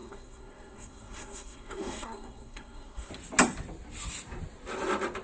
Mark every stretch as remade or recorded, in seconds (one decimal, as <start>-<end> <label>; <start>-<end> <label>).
0.0-3.1 remade; 3.1-5.2 recorded